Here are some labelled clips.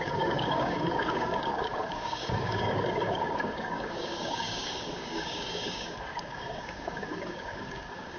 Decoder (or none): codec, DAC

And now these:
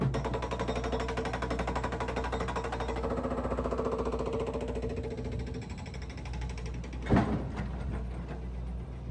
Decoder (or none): none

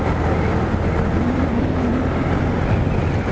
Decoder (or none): none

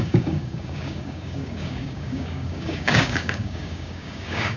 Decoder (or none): codec, DAC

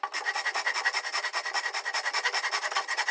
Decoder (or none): none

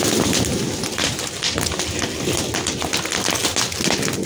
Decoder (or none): none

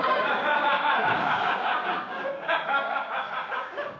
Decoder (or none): codec, DAC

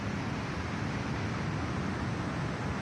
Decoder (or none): none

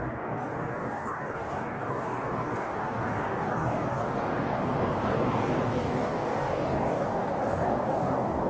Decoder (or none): codec, DAC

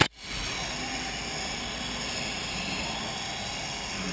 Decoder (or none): none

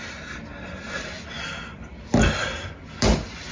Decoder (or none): none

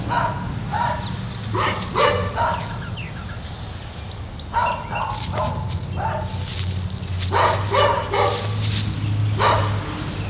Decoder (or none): none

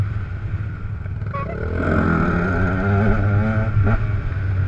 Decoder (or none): none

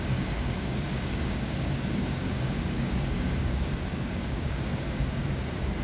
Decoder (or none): codec, DAC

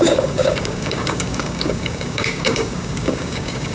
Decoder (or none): codec, DAC